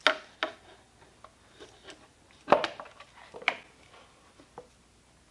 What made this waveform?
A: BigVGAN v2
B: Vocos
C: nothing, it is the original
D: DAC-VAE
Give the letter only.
C